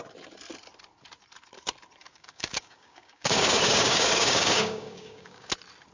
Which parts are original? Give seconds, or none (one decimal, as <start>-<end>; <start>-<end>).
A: 0.0-2.0; 5.5-5.9